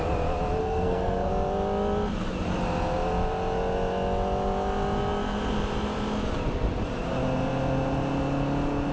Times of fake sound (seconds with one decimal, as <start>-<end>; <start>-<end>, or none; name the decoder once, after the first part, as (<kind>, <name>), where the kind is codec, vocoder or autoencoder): 0.6-1.3 (codec, SNAC)